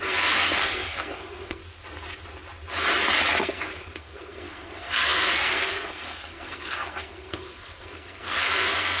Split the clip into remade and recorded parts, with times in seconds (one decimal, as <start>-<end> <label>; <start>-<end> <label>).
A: 0.0-1.6 remade; 1.6-3.4 recorded; 3.4-9.0 remade